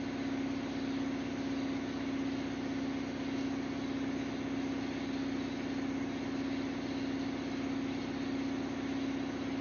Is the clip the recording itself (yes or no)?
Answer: yes